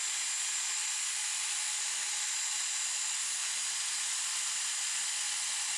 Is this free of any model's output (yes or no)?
yes